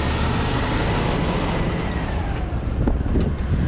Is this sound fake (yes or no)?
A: no